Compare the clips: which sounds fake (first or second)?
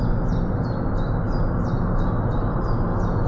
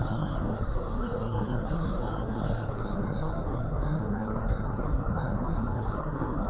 second